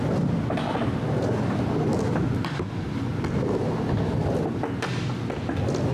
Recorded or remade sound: recorded